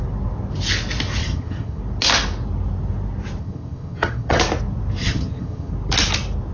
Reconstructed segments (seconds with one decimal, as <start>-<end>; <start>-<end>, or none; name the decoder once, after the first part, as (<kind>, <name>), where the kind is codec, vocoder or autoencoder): 1.2-1.8 (vocoder, HiFi-GAN); 3.4-4.4; 5.0-5.7